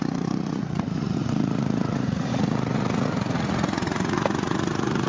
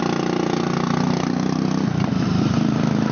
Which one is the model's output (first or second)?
first